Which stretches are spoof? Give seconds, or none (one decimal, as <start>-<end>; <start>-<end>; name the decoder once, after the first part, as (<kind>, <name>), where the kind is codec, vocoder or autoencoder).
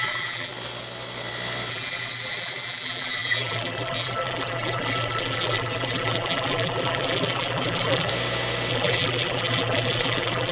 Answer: 0.0-0.5 (vocoder, BigVGAN v2); 1.7-8.1; 8.7-10.5